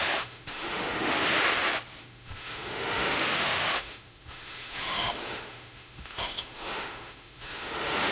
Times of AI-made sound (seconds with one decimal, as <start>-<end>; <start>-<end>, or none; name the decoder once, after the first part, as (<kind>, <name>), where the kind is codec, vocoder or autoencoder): 0.0-1.2 (autoencoder, DAC-VAE); 2.0-8.1